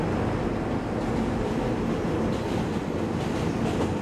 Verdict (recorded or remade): recorded